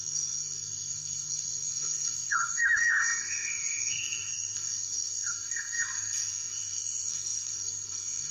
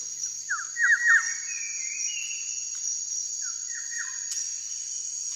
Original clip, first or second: second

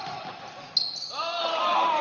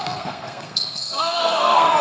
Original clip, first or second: first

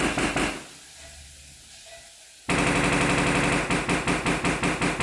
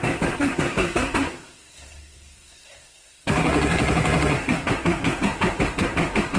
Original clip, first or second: first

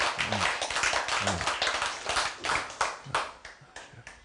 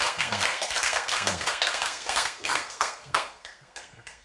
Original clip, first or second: first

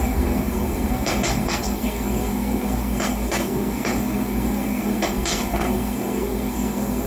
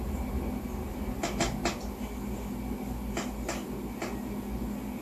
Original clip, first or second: second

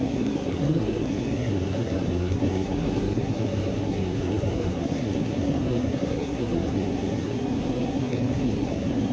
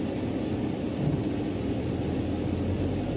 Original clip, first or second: second